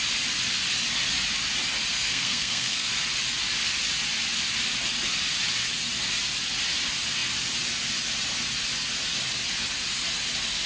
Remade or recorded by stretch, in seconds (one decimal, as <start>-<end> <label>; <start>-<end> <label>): 0.0-1.9 recorded; 1.9-2.9 remade; 2.9-10.7 recorded